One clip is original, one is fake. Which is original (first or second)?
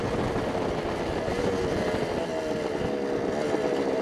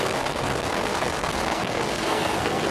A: first